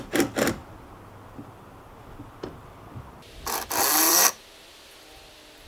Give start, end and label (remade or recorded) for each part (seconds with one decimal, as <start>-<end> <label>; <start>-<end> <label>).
0.0-0.6 remade; 0.6-4.0 recorded; 4.0-5.7 remade